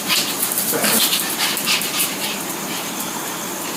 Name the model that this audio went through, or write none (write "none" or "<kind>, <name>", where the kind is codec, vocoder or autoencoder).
vocoder, BigVGAN v2